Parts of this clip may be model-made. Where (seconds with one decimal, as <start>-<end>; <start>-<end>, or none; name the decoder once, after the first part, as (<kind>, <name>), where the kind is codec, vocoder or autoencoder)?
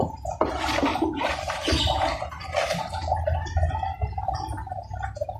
0.9-2.3 (vocoder, BigVGAN v2); 3.0-3.5